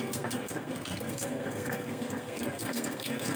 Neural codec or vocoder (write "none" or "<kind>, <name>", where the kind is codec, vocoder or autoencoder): codec, SNAC